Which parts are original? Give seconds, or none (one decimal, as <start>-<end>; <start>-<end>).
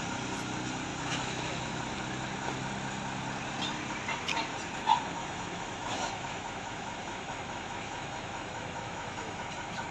0.0-0.9; 1.8-5.2; 9.5-9.9